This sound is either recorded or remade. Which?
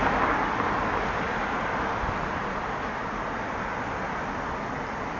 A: recorded